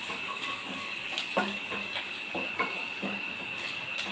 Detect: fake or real fake